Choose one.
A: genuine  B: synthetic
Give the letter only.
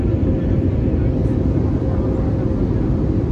A